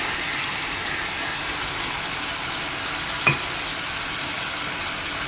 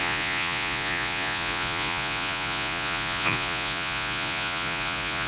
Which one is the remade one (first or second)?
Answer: second